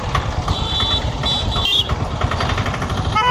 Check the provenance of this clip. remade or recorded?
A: remade